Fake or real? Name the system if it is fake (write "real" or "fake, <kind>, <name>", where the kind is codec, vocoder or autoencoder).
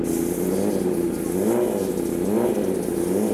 real